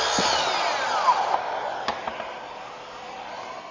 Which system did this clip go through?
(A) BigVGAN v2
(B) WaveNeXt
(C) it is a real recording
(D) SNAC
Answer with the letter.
C